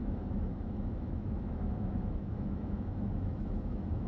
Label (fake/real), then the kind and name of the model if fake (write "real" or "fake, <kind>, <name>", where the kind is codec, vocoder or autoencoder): fake, autoencoder, DAC-VAE